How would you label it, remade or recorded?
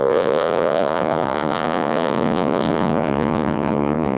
remade